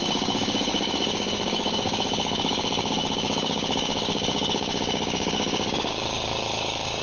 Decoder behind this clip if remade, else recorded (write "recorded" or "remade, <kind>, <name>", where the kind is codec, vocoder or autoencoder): remade, codec, DAC